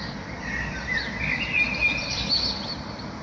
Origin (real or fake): real